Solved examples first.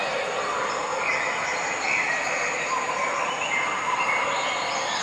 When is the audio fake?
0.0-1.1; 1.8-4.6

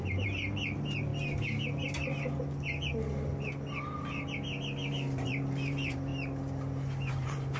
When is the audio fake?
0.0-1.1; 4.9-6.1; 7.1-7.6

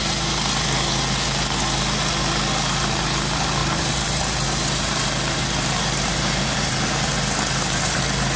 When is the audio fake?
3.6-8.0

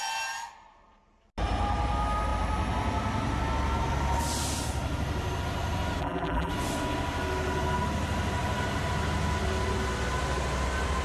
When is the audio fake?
6.0-6.5

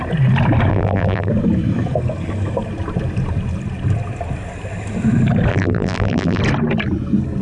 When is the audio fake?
0.7-1.3; 5.5-6.4